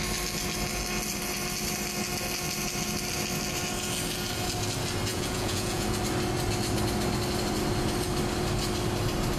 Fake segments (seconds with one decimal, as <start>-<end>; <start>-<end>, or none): 5.1-6.0